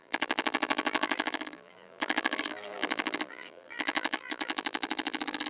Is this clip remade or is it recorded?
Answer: remade